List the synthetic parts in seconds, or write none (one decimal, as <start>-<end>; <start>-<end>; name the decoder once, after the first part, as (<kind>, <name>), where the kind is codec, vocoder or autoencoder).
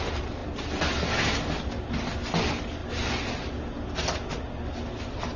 none